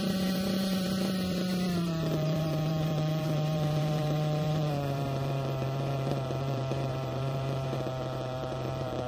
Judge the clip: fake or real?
fake